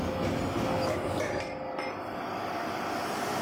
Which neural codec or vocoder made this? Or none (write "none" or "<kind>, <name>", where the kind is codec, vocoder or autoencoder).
none